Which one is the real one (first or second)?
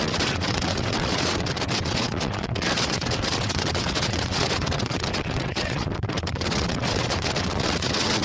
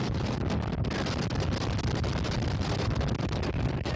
second